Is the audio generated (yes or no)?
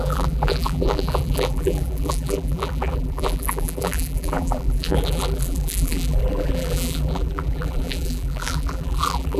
yes